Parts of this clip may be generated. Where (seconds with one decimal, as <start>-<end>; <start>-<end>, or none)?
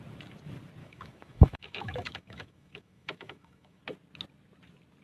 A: 0.8-3.8